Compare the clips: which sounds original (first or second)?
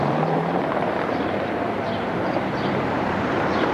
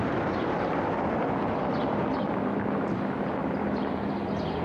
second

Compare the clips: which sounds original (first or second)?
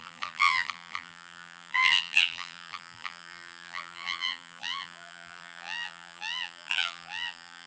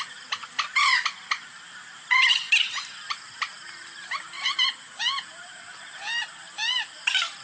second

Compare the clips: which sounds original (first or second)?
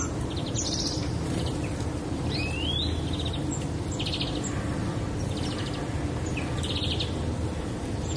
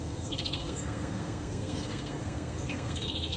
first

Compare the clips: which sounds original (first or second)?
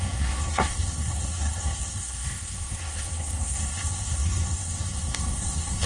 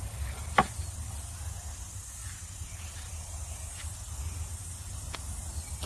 second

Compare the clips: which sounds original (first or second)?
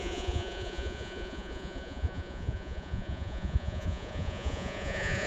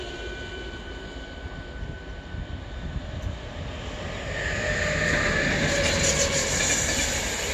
second